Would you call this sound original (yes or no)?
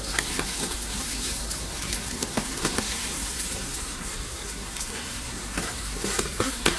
no